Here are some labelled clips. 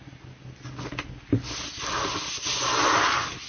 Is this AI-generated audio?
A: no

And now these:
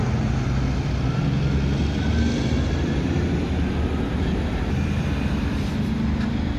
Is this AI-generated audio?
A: no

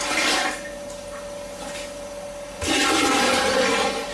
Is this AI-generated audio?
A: no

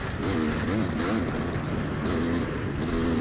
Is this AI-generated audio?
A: no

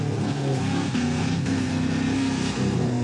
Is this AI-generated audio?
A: yes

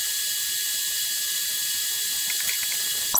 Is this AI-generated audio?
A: no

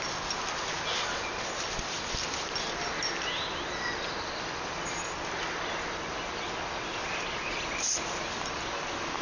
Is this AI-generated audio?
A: no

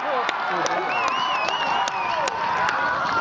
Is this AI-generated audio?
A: no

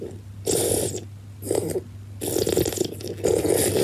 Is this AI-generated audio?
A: no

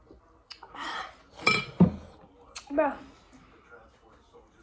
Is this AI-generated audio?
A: no